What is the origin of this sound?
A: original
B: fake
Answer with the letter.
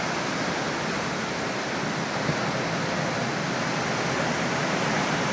A